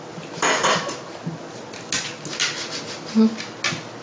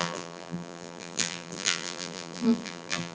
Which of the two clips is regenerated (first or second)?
second